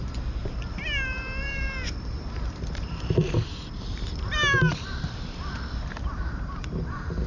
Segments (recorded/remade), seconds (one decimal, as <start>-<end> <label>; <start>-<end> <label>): 0.0-0.4 remade; 0.4-1.4 recorded; 1.4-3.5 remade; 3.5-4.7 recorded; 4.7-7.3 remade